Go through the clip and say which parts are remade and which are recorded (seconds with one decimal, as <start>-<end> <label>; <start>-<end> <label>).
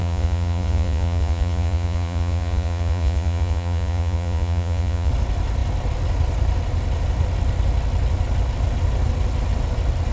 0.0-5.1 remade; 5.1-10.1 recorded